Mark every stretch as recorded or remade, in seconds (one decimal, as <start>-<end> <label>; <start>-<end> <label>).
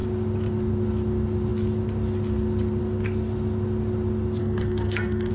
0.0-4.4 recorded; 4.4-5.3 remade